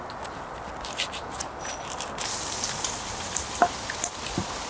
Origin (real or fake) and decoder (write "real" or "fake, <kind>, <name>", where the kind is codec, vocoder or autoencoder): real